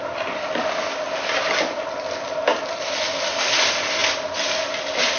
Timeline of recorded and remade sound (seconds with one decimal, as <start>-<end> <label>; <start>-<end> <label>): 0.0-2.5 recorded; 2.5-3.4 remade; 3.4-5.2 recorded